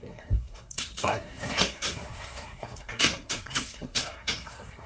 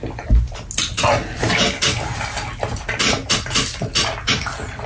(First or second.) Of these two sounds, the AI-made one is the first